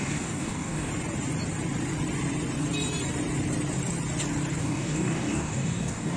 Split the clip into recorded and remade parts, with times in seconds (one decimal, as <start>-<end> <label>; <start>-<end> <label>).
0.0-0.9 remade; 0.9-4.6 recorded; 4.6-6.2 remade